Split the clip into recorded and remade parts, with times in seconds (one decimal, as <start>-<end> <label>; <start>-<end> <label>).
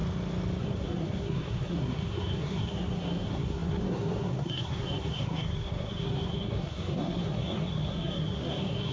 0.0-0.6 recorded; 0.6-8.9 remade